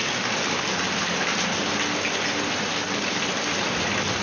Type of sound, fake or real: real